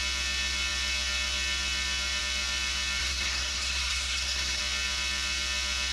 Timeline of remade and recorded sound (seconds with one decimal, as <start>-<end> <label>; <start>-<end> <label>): 0.0-3.0 recorded; 3.0-4.6 remade; 4.6-5.9 recorded